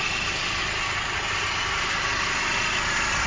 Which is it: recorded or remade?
recorded